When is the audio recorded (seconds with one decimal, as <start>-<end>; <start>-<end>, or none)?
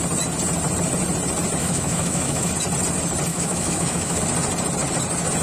0.0-1.6; 2.5-3.3; 4.2-5.4